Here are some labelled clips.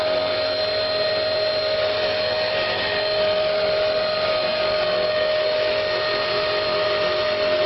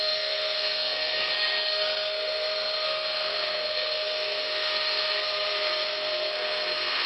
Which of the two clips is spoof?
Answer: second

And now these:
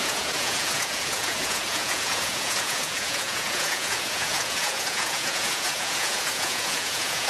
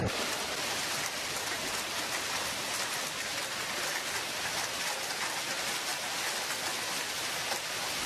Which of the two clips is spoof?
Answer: first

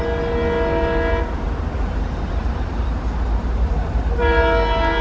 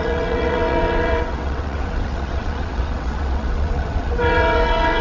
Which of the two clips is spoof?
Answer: second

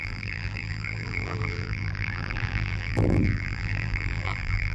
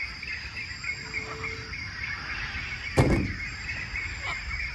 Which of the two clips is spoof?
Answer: first